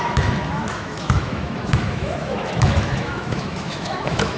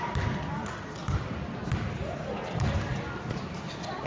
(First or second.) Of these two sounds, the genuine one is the second